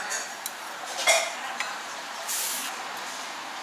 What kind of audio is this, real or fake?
real